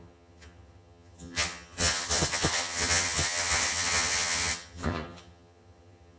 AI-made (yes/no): yes